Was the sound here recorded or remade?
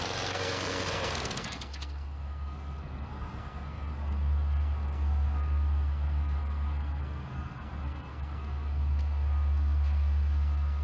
remade